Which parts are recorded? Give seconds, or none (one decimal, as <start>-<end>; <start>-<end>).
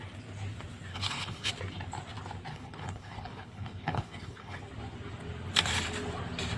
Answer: 0.0-0.9; 1.5-2.5; 4.6-6.6